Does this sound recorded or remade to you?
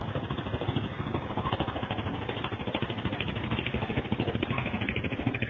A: recorded